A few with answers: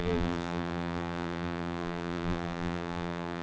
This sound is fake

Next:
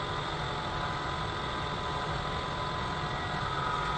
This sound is real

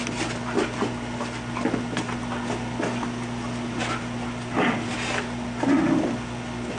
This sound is real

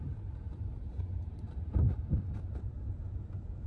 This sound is fake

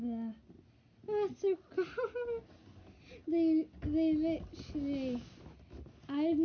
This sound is real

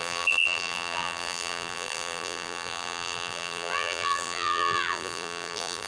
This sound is fake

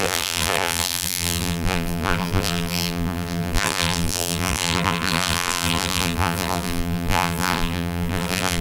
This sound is fake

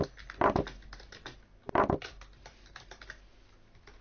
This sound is real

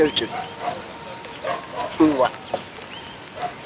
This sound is real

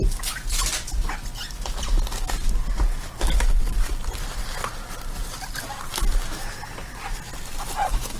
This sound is real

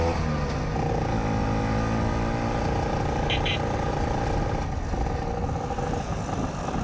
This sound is real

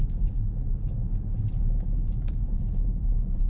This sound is real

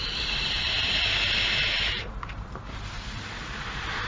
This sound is fake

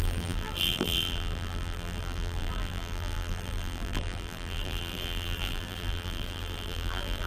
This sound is fake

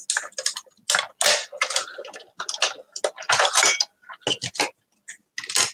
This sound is real